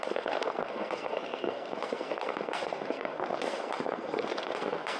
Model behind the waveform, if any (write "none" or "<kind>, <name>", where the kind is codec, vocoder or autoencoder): codec, SNAC